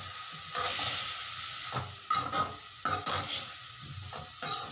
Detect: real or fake real